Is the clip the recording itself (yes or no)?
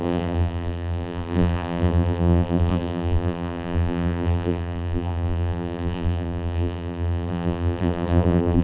no